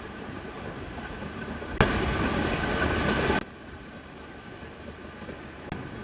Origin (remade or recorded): recorded